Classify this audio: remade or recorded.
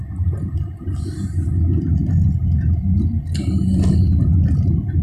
recorded